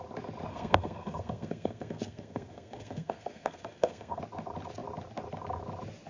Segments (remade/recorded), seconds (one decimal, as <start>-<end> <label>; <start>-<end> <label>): 0.0-0.5 recorded; 0.5-4.2 remade; 4.2-6.1 recorded